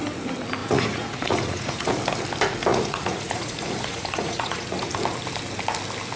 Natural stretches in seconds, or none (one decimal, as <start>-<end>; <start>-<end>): 0.0-0.6; 2.0-2.7; 4.9-6.2